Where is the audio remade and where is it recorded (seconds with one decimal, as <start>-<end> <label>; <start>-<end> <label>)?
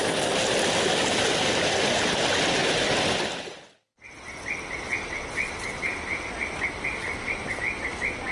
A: 0.0-8.3 recorded